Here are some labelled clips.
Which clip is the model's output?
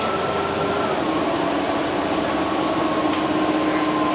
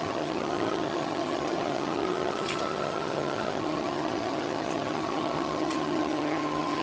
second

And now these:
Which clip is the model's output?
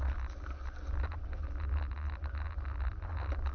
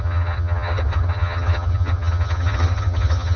second